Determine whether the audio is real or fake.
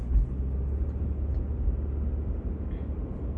real